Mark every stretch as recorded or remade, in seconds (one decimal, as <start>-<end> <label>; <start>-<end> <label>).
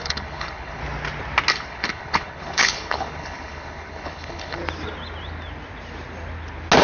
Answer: 0.0-0.8 remade; 0.8-1.5 recorded; 1.5-4.6 remade; 4.6-6.8 recorded